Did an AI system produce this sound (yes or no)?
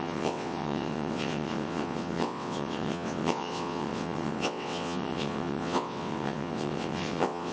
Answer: yes